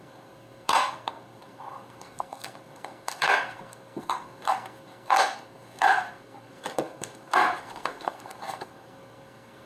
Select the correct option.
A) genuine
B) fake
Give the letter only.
B